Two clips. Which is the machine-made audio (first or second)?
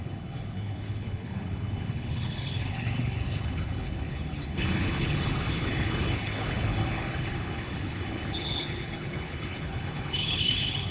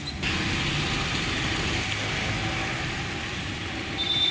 first